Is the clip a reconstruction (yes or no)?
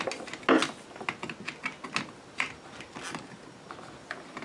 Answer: no